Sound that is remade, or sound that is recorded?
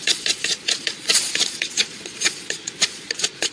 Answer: remade